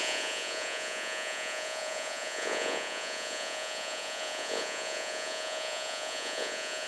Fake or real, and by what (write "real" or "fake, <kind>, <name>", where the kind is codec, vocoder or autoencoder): fake, vocoder, Vocos